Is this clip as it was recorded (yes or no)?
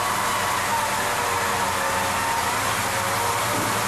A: yes